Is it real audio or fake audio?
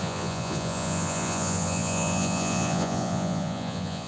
fake